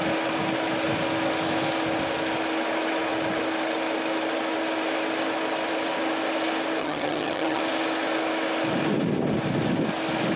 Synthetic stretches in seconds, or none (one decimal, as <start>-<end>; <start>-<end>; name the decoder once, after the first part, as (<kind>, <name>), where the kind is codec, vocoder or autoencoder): 6.8-7.6 (vocoder, HiFi-GAN)